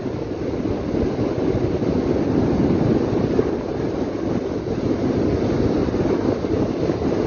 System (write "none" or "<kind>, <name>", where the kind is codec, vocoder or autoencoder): none